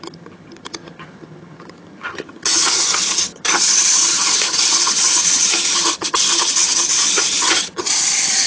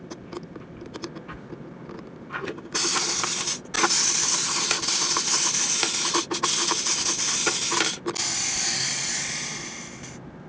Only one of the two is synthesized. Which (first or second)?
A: first